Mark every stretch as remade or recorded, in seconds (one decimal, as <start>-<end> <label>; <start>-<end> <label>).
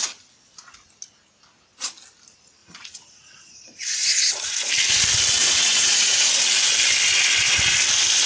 0.0-2.6 recorded; 2.6-4.7 remade; 4.7-5.4 recorded; 5.4-6.3 remade; 6.3-8.3 recorded